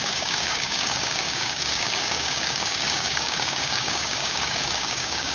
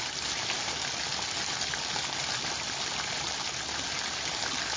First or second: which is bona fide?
second